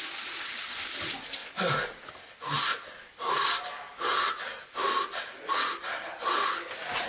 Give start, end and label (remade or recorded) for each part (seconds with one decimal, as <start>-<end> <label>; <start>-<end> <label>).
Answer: 0.0-7.1 recorded